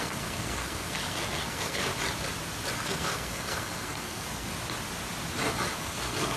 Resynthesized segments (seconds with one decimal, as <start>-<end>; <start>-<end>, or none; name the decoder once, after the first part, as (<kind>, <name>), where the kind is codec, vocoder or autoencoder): 0.0-1.9 (codec, SNAC); 2.7-4.5; 5.8-6.4